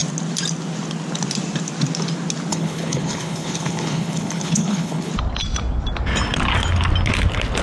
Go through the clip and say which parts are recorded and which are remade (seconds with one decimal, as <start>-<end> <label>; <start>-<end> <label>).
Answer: 0.0-2.5 recorded; 2.5-5.1 remade; 5.1-7.6 recorded